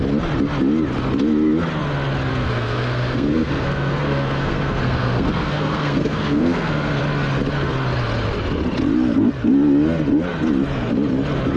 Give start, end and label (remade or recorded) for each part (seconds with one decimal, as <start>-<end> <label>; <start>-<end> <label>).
0.0-2.3 recorded; 2.3-7.0 remade; 7.0-11.6 recorded